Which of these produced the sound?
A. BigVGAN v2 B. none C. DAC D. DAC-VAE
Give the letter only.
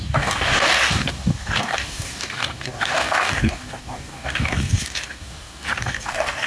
C